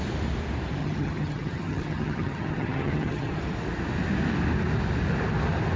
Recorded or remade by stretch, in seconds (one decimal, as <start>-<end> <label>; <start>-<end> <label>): 0.0-0.8 recorded; 0.8-3.3 remade; 3.3-5.8 recorded